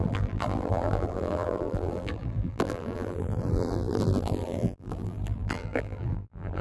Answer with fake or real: fake